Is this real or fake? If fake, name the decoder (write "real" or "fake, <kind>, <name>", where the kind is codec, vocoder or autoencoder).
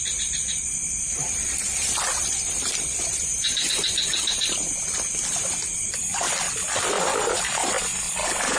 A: fake, vocoder, BigVGAN v2